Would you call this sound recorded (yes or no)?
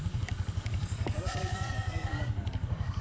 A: no